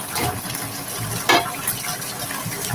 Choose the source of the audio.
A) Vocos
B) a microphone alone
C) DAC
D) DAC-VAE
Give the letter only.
B